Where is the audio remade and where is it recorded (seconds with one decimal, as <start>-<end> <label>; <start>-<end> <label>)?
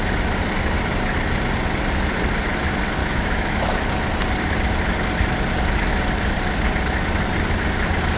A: 0.0-3.0 recorded; 3.0-3.9 remade; 3.9-8.2 recorded